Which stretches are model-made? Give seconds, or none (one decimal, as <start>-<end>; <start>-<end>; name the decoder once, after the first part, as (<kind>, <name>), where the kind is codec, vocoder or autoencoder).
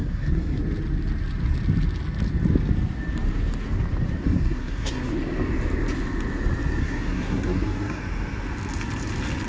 0.0-0.6 (codec, SNAC); 4.2-5.1; 6.8-8.0